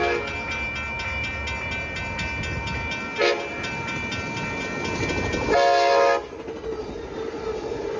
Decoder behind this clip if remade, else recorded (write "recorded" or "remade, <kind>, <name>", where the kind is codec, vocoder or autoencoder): recorded